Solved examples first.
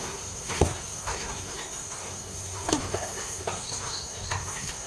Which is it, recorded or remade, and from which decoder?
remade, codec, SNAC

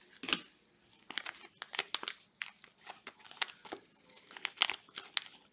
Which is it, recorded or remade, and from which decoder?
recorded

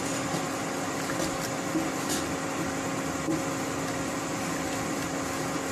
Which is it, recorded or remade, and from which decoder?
recorded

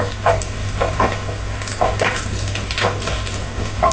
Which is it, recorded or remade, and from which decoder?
remade, codec, DAC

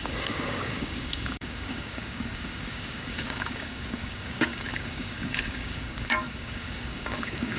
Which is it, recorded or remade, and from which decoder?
remade, codec, DAC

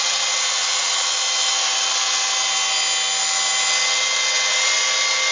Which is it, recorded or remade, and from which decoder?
recorded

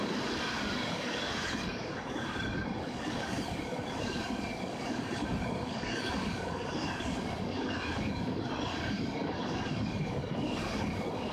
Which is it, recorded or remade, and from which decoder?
remade, codec, DAC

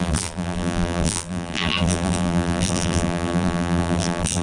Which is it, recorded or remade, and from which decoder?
remade, vocoder, BigVGAN v2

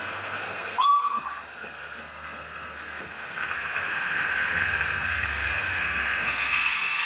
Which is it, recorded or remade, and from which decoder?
remade, codec, SNAC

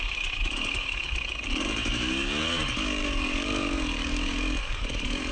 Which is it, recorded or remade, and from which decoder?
remade, codec, DAC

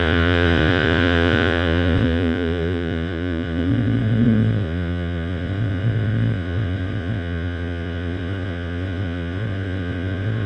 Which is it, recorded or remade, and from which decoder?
remade, vocoder, Vocos